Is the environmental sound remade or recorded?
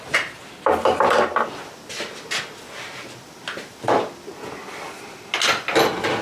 recorded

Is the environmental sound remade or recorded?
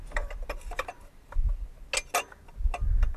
recorded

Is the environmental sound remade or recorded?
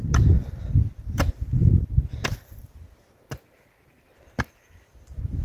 recorded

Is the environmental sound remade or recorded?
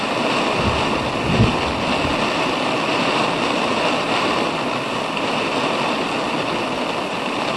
recorded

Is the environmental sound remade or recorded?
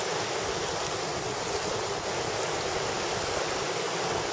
recorded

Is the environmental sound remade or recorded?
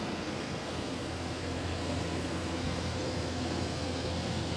remade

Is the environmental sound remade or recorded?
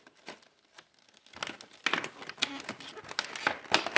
recorded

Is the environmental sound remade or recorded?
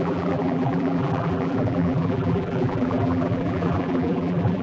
remade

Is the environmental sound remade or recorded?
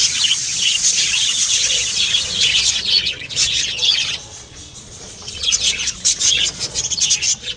remade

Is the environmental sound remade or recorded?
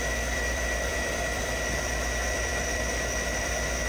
remade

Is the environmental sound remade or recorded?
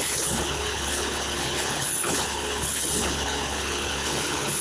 remade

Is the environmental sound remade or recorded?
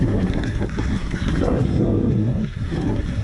remade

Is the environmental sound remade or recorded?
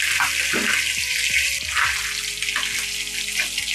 recorded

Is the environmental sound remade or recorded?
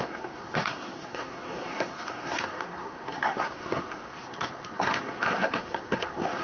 remade